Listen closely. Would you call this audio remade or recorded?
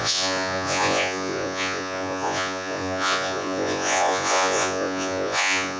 remade